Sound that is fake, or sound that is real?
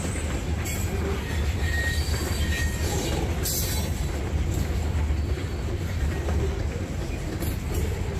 real